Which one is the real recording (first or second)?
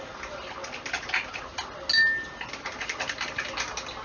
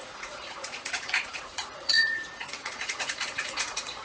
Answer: first